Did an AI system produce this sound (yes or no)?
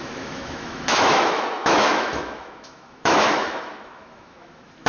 yes